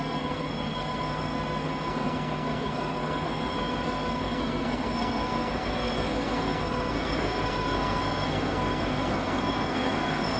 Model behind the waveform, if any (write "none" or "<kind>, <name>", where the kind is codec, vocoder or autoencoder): codec, SNAC